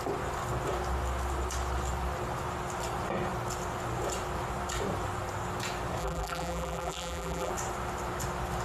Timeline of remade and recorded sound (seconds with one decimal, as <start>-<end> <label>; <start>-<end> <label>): 0.0-6.0 recorded; 6.0-7.5 remade; 7.5-8.6 recorded